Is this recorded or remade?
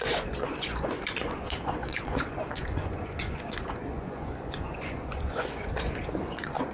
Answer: remade